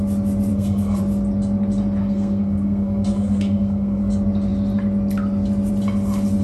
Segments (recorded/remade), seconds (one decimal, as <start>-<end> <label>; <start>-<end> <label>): 0.0-0.5 recorded; 0.5-1.0 remade; 1.0-2.0 recorded; 2.0-4.1 remade; 4.1-6.4 recorded